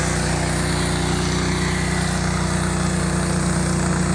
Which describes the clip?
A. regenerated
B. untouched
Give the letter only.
B